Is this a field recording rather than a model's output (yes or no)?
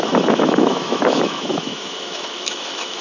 no